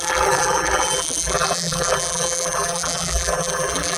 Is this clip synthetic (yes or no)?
yes